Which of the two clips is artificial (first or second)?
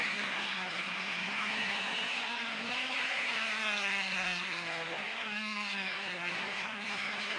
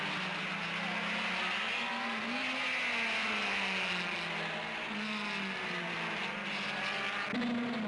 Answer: first